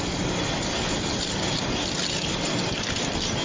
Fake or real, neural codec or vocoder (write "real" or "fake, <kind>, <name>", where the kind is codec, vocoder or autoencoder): real